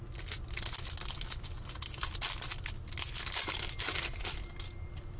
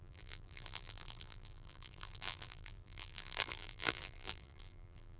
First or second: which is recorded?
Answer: first